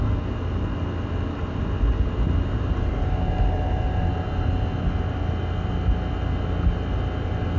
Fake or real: real